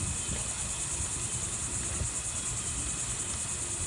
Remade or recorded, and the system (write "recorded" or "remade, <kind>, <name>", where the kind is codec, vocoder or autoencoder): recorded